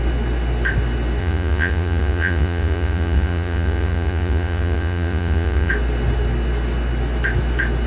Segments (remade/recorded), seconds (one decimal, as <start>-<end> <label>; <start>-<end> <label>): 0.0-1.2 recorded; 1.2-5.7 remade; 5.7-7.9 recorded